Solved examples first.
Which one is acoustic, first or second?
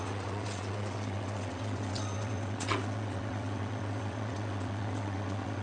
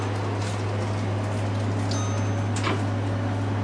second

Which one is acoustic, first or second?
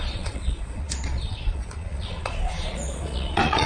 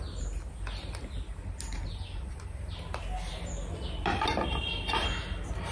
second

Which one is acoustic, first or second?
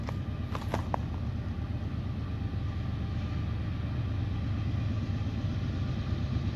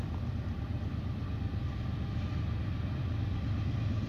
first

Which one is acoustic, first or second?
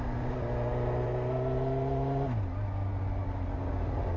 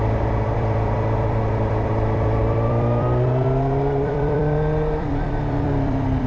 first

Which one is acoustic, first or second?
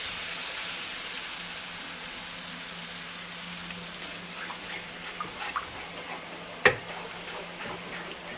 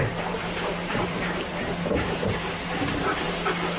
first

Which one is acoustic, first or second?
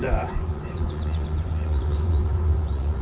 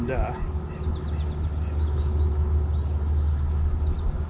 second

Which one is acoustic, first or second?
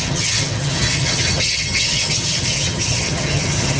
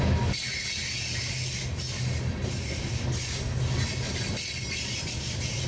second